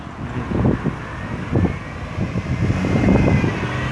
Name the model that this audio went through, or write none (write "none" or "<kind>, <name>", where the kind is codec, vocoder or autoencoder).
none